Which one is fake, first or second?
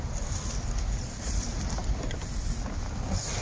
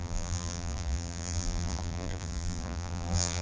second